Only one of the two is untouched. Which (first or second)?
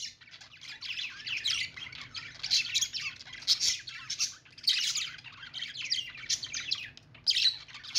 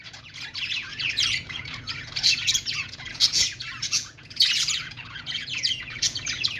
first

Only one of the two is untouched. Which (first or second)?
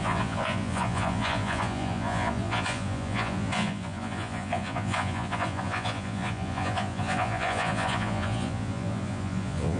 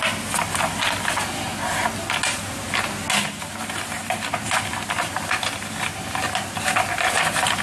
second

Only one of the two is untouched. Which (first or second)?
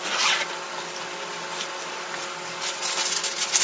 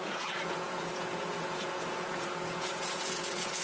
first